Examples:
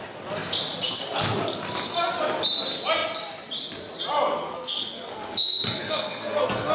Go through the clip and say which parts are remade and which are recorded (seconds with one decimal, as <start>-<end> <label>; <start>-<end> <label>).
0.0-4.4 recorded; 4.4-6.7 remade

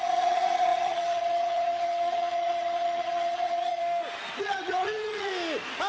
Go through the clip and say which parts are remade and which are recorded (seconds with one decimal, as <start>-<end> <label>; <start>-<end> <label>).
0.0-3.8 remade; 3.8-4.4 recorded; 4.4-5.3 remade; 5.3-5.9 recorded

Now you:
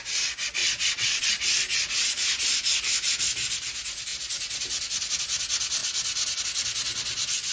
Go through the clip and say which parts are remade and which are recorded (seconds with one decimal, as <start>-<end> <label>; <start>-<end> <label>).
0.0-0.6 recorded; 0.6-1.3 remade; 1.3-7.5 recorded